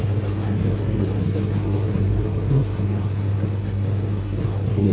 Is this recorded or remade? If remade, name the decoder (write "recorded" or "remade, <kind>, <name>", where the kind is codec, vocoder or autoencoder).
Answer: remade, codec, SNAC